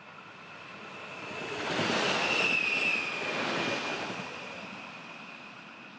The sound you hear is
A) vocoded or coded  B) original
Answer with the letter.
B